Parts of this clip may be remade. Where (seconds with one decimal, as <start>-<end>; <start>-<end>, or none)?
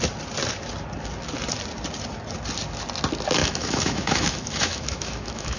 3.4-5.6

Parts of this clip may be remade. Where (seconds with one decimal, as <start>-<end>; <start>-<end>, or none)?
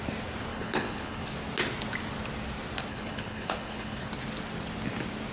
0.5-1.3; 2.9-4.1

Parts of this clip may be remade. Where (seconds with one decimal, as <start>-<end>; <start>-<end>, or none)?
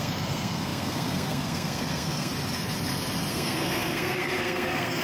0.0-2.3; 3.3-5.0